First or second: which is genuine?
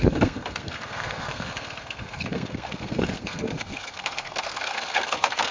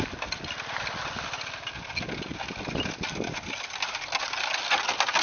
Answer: second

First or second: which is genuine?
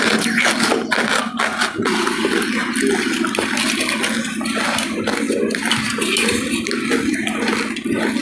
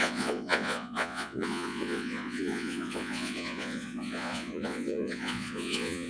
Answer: first